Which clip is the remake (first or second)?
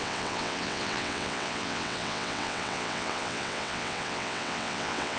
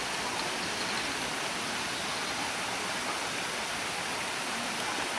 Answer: first